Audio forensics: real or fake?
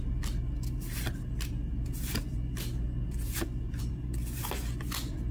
real